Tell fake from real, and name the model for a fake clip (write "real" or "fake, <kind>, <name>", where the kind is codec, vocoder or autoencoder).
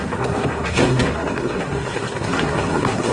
fake, codec, SNAC